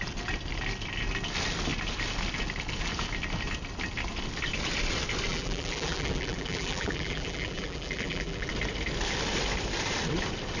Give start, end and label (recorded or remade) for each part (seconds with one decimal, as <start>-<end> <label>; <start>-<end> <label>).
0.0-5.3 recorded; 5.3-8.5 remade; 8.5-10.6 recorded

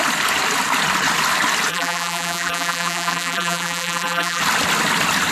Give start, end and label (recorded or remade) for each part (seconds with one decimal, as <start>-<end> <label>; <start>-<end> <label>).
0.0-1.7 recorded; 1.7-4.4 remade; 4.4-5.3 recorded

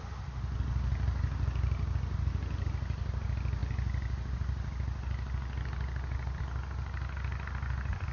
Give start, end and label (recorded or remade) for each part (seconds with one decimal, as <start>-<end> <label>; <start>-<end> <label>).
0.0-8.1 recorded

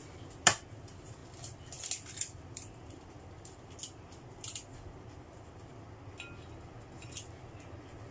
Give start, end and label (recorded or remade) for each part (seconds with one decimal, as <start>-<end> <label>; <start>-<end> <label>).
0.0-8.1 recorded